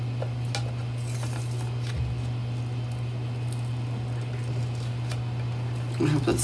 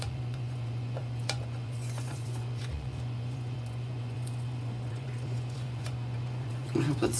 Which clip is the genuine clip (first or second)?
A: first